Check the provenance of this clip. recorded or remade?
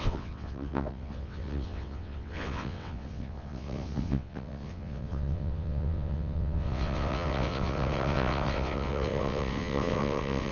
remade